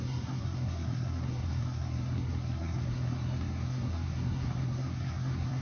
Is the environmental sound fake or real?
fake